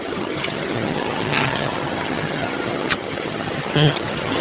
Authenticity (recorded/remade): remade